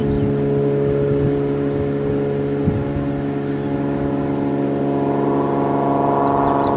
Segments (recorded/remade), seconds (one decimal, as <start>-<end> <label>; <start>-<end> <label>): 0.0-6.8 recorded